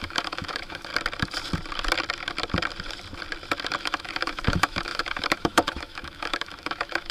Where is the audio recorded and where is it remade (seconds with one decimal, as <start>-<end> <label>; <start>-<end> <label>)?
0.0-0.9 remade; 0.9-3.8 recorded; 3.8-7.1 remade